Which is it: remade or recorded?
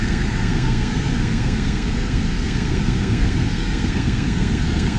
remade